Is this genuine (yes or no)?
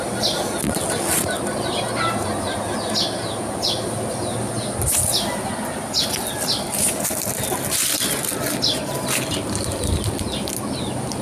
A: yes